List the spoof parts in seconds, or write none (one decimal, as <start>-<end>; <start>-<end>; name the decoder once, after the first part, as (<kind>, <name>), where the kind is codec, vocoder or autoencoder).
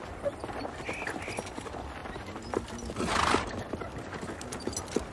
none